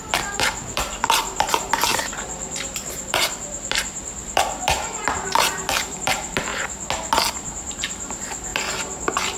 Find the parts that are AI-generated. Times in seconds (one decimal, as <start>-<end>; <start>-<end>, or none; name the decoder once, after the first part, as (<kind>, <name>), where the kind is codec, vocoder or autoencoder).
0.0-6.5 (vocoder, BigVGAN v2); 7.3-9.4